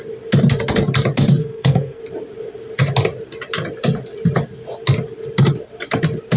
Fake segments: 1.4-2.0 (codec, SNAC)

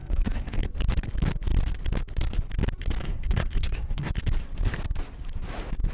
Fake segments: 0.0-0.7 (codec, SNAC); 3.0-4.1

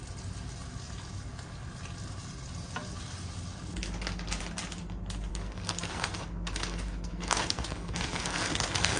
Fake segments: 5.3-9.0 (codec, SNAC)

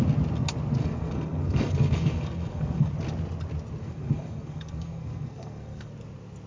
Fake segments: 0.8-2.9 (codec, SNAC); 3.8-5.9

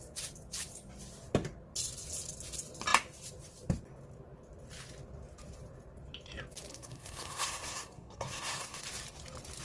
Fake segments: 6.7-8.8 (codec, SNAC)

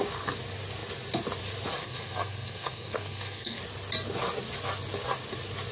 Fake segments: 1.8-3.6 (codec, SNAC)

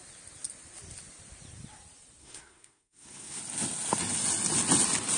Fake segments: 2.2-3.4 (codec, SNAC)